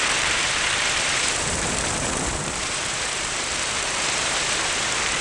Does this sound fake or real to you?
fake